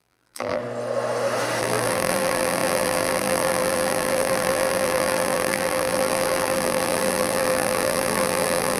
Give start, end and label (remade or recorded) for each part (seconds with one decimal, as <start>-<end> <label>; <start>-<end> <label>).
0.0-0.6 remade; 0.6-1.6 recorded; 1.6-8.8 remade